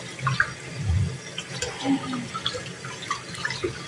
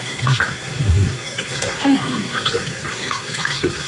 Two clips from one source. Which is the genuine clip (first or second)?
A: first